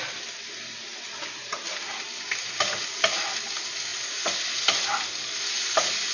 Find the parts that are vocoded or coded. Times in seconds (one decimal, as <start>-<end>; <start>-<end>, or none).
none